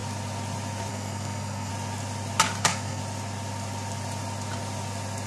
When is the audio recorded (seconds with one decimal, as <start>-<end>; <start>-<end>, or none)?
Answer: 0.0-0.9; 1.7-2.6; 3.0-5.3